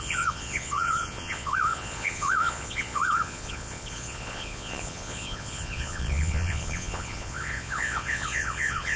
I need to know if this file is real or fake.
fake